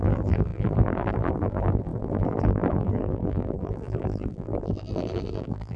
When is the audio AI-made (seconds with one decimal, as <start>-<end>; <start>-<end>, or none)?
0.0-5.8